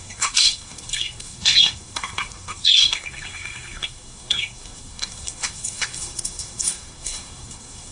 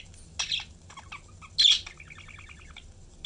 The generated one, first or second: first